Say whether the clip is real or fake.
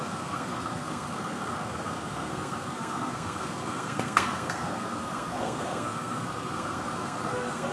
fake